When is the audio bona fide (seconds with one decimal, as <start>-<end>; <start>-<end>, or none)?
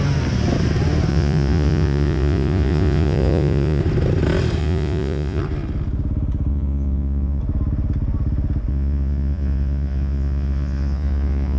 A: 0.0-1.1; 3.8-4.6; 5.4-6.5; 7.4-8.7